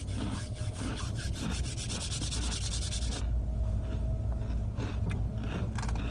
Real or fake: real